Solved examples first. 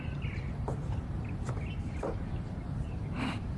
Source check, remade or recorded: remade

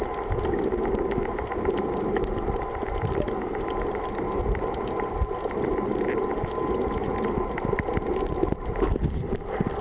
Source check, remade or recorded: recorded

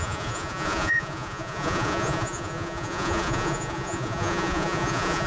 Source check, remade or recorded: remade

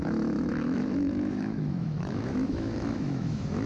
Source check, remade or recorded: remade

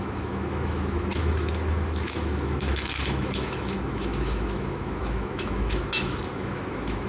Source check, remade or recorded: remade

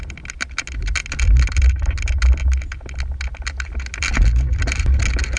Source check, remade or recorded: recorded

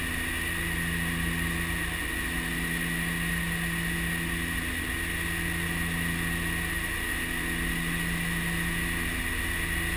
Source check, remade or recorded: recorded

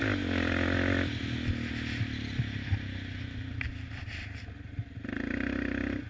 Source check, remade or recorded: recorded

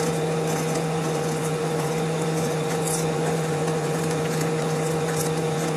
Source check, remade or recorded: remade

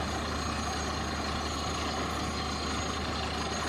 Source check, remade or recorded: recorded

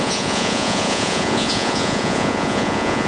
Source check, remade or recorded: remade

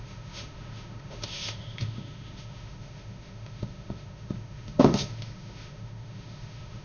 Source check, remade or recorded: remade